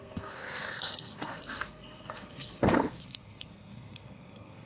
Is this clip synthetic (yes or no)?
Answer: yes